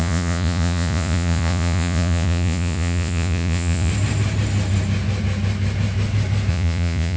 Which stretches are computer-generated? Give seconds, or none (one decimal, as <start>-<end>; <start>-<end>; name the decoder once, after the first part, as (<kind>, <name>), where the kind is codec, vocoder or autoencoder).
0.0-3.9 (vocoder, Vocos); 6.5-7.2